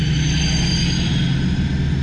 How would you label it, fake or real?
real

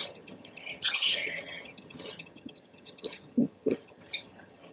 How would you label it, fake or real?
fake